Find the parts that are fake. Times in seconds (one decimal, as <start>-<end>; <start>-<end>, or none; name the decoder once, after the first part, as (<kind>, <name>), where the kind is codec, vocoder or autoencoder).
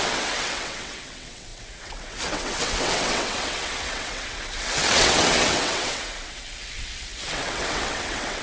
0.0-8.4 (vocoder, WaveNeXt)